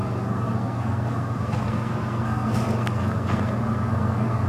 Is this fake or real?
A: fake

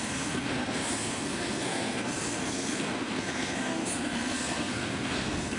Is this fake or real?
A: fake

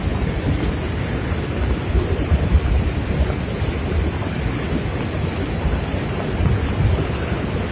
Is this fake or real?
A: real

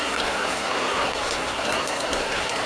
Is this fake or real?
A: fake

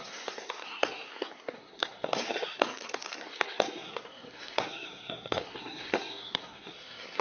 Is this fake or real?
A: fake